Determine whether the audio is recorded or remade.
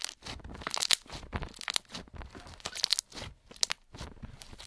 recorded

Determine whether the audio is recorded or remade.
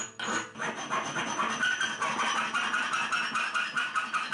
recorded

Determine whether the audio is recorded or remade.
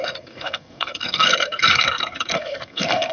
remade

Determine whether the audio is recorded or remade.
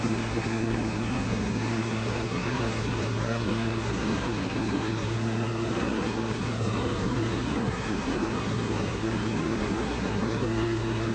remade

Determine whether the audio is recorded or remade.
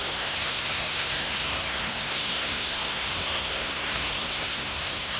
remade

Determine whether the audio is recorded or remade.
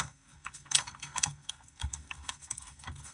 remade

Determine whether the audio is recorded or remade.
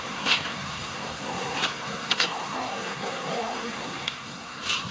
remade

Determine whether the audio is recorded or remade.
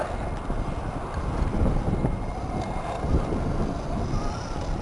recorded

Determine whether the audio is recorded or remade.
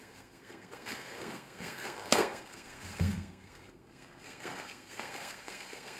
remade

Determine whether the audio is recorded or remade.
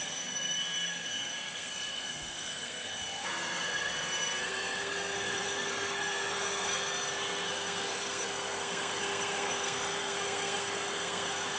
remade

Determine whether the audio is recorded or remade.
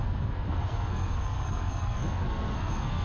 remade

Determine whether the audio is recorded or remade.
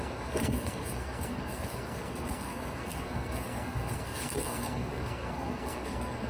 remade